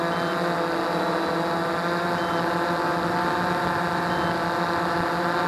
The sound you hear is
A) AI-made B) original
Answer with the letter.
B